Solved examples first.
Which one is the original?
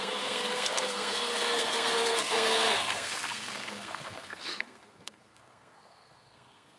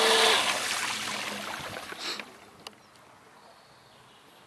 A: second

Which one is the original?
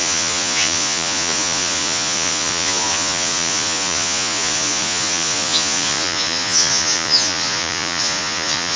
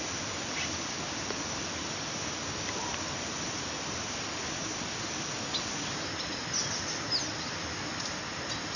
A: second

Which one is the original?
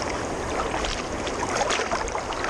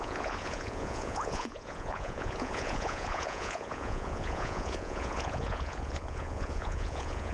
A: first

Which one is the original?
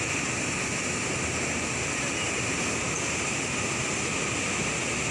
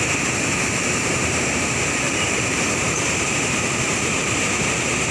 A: first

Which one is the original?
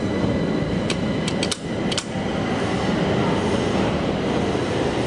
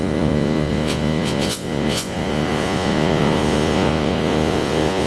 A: first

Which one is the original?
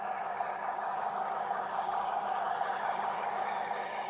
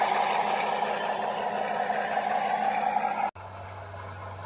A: second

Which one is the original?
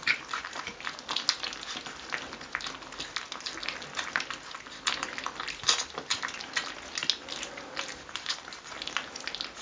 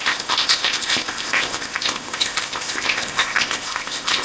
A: first